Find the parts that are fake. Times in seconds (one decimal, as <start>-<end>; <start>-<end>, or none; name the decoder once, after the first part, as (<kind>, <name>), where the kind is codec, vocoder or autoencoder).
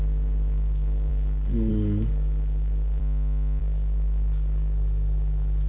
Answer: 0.0-3.0 (codec, SNAC); 3.6-5.7